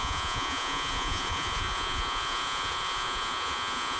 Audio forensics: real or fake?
fake